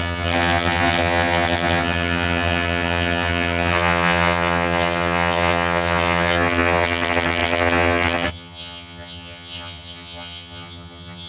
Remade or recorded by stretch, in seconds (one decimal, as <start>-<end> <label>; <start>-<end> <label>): 0.0-11.3 remade